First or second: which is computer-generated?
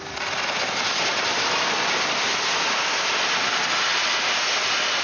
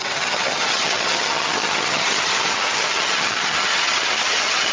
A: second